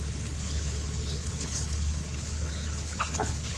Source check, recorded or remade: remade